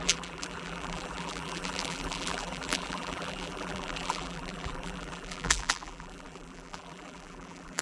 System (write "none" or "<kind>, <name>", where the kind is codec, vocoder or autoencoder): vocoder, BigVGAN v2